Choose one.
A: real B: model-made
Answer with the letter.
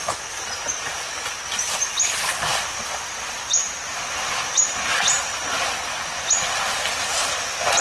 A